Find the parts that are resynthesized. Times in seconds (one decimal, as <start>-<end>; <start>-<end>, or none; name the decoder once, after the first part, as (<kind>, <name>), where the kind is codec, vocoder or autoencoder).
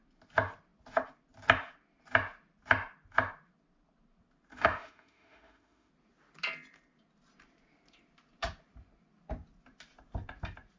4.5-5.9 (autoencoder, DAC-VAE)